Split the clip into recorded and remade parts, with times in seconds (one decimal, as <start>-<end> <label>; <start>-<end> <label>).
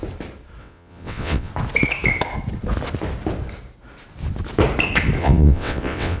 0.0-0.6 recorded; 0.6-1.5 remade; 1.5-5.2 recorded; 5.2-6.2 remade